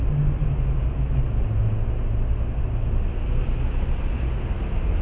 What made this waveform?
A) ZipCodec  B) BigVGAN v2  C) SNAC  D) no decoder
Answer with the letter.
D